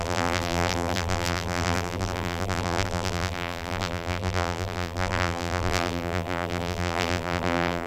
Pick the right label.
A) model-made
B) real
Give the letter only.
A